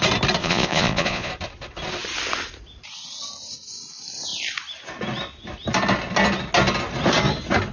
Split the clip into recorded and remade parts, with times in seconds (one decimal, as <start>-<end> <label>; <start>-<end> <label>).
0.0-0.4 recorded; 0.4-1.3 remade; 1.3-7.7 recorded